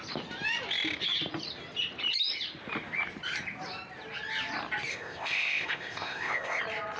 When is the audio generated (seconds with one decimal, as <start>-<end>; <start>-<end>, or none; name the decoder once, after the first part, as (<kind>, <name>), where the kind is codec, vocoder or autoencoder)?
4.9-6.6 (codec, ZipCodec)